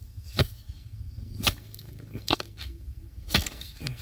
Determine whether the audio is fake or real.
fake